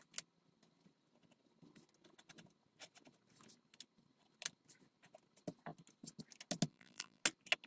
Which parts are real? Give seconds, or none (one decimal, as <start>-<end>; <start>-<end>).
0.0-6.7; 7.2-7.7